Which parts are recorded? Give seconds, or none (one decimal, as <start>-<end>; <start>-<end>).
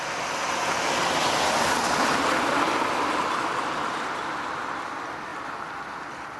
0.0-6.4